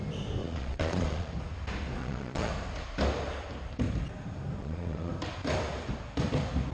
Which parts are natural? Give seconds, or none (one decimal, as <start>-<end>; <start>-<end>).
0.0-0.4; 1.3-2.0; 2.5-4.6; 5.1-6.7